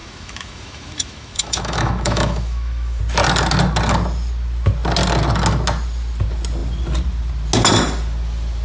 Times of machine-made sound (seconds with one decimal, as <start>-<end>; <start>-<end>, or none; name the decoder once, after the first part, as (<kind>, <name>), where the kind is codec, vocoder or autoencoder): 0.0-3.0 (autoencoder, DAC-VAE)